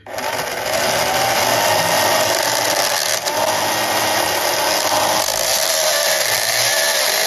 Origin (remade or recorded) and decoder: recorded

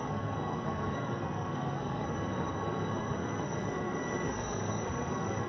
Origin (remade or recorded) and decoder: remade, codec, SNAC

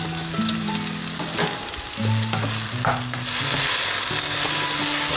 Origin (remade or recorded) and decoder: recorded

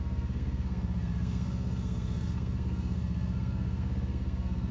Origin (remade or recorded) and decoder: remade, codec, SNAC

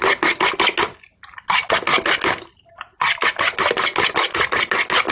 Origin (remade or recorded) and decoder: recorded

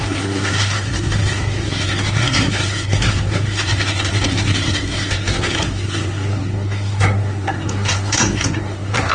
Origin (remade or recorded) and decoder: remade, codec, SNAC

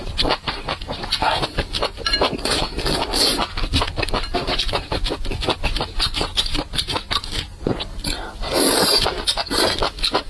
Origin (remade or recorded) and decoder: recorded